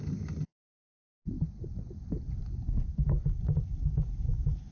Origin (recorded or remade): recorded